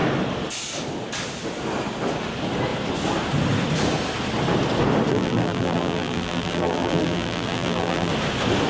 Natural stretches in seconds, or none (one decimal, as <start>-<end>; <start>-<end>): 0.0-5.1; 8.1-8.7